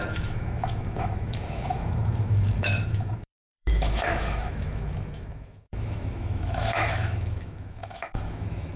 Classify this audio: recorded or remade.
remade